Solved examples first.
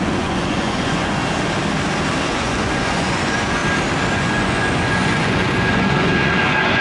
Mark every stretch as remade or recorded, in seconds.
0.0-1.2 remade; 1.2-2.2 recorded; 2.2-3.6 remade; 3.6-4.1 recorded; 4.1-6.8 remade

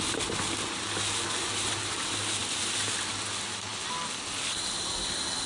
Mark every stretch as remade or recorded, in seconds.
0.0-5.5 recorded